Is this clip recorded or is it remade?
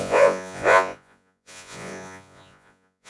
remade